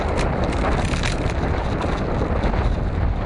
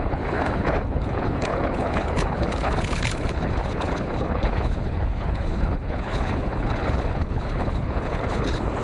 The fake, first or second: second